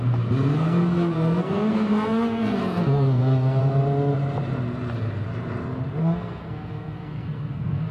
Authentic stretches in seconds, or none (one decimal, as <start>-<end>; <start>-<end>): 0.0-0.5; 3.6-6.0